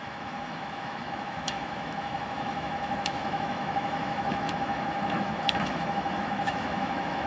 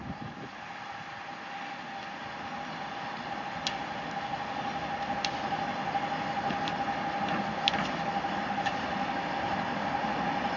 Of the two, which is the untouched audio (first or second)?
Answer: second